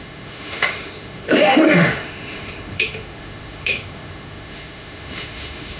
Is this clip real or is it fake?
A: fake